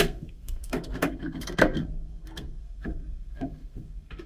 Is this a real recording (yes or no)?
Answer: no